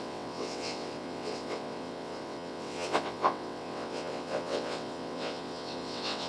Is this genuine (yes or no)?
no